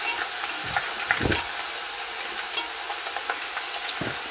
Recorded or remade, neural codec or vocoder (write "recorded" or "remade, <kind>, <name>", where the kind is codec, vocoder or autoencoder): recorded